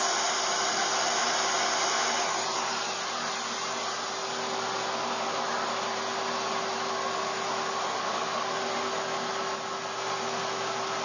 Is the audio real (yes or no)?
yes